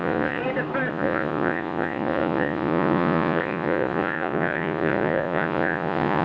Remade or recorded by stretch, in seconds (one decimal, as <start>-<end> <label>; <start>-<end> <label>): 0.0-0.4 remade; 0.4-0.9 recorded; 0.9-6.2 remade